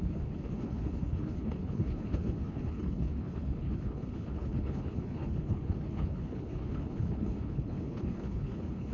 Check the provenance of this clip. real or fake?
fake